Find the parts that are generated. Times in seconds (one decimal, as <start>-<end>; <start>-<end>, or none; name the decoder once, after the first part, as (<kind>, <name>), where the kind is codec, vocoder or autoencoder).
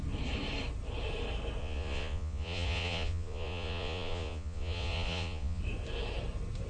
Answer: 1.6-5.6 (vocoder, Vocos)